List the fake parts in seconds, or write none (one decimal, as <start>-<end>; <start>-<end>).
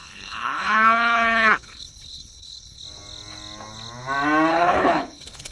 0.0-2.8; 4.5-5.5